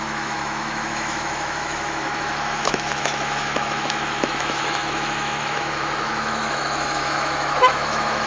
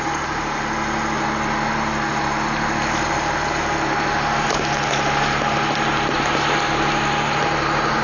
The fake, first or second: first